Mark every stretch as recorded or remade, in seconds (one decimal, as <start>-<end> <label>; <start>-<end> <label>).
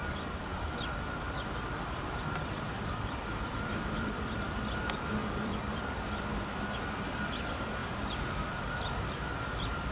0.0-4.7 remade; 4.7-5.2 recorded; 5.2-5.9 remade; 5.9-9.9 recorded